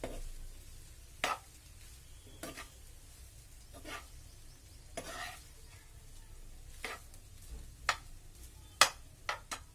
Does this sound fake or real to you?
real